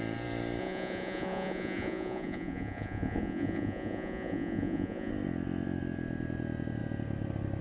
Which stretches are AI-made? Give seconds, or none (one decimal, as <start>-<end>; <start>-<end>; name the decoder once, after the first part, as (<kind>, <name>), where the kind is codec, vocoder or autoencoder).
0.6-5.1 (vocoder, Vocos)